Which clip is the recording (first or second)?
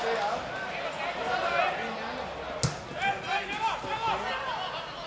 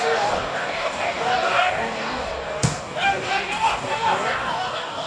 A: first